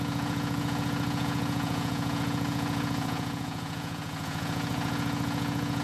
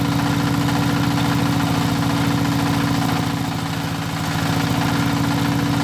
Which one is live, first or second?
second